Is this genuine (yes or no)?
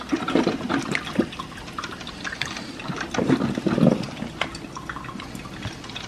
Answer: yes